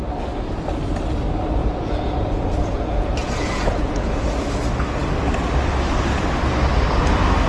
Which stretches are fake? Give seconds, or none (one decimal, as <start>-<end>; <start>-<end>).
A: 1.6-4.1